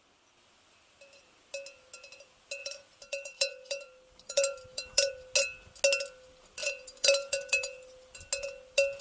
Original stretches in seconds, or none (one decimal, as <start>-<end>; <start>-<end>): 0.0-2.6; 5.1-6.6; 8.3-9.0